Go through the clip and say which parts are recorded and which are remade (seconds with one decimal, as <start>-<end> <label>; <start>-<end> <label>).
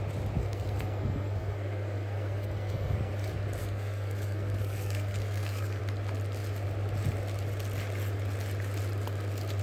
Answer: 0.0-0.4 recorded; 0.4-3.1 remade; 3.1-3.6 recorded; 3.6-5.8 remade; 5.8-9.6 recorded